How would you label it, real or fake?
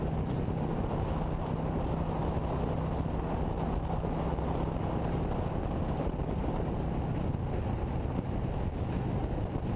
real